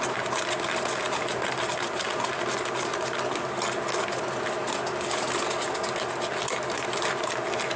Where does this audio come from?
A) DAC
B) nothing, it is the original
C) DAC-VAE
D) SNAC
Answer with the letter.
B